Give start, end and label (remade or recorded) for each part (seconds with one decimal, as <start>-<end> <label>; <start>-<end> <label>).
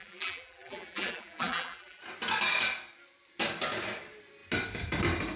0.0-2.0 remade; 2.0-5.4 recorded